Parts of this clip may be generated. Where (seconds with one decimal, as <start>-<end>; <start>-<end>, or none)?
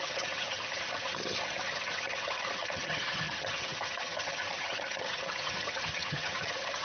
0.0-6.8